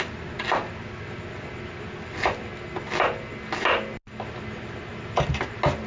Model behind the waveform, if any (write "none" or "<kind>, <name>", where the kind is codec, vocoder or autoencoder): none